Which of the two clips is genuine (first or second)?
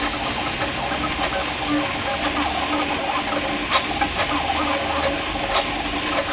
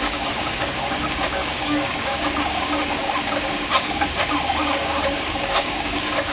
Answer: first